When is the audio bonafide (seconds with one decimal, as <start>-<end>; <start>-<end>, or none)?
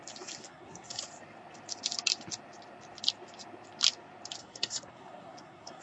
0.0-0.4; 1.0-4.4